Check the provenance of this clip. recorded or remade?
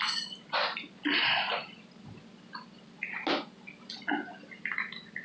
recorded